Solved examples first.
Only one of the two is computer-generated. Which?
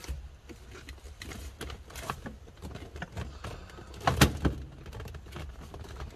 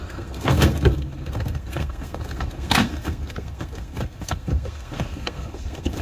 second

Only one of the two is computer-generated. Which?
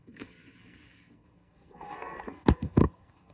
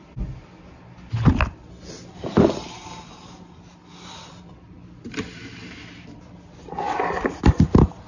first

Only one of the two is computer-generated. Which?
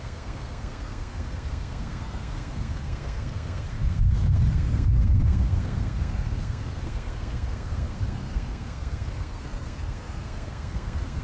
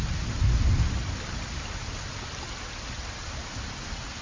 first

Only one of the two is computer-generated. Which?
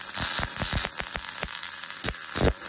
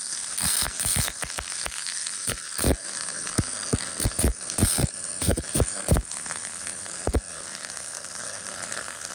second